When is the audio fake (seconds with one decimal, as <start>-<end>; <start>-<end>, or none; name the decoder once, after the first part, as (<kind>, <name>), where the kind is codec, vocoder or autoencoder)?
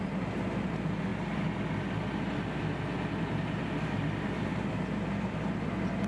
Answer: none